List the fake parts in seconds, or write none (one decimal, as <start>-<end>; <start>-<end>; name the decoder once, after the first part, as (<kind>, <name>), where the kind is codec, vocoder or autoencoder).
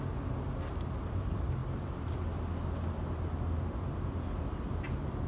none